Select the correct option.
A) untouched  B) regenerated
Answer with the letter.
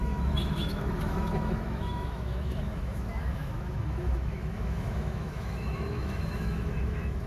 B